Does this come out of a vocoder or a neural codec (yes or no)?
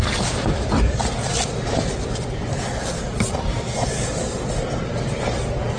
no